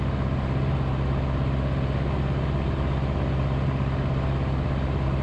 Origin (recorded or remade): recorded